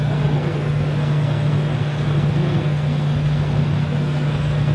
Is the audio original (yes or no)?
no